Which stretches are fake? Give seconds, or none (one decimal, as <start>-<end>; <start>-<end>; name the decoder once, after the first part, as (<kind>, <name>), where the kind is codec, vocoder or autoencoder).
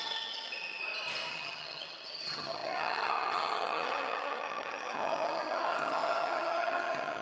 0.0-0.8 (vocoder, HiFi-GAN); 1.3-7.2